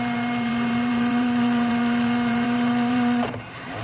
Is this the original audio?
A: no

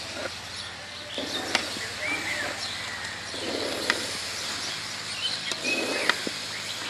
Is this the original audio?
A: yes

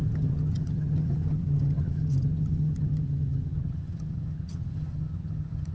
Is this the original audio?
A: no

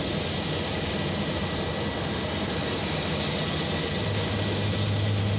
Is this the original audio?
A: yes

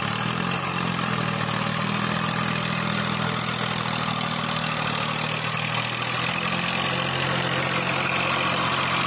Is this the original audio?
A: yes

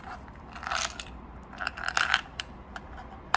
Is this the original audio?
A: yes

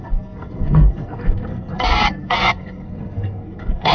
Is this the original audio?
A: no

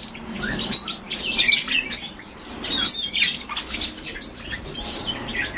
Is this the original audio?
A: yes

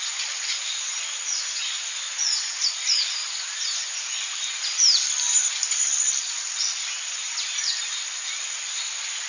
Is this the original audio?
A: yes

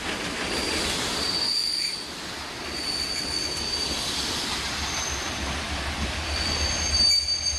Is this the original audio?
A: yes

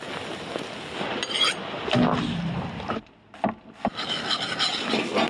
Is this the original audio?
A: yes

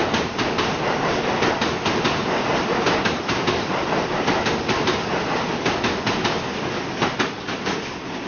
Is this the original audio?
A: no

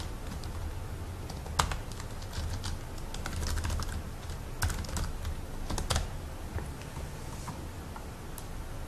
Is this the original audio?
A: yes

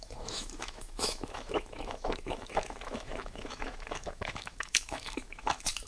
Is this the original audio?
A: no